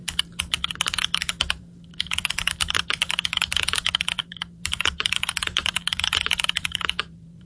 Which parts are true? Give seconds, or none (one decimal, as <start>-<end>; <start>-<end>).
0.0-0.8

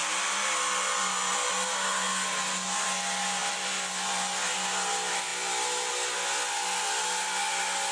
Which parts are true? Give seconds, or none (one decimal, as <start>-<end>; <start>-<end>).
1.5-3.4; 3.9-7.9

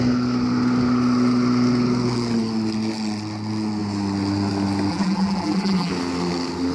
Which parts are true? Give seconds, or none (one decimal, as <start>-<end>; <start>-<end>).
0.0-4.9; 5.9-6.7